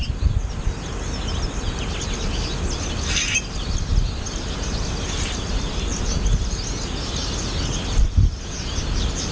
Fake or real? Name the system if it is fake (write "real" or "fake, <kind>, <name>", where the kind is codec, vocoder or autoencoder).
real